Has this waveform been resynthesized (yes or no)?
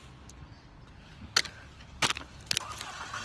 no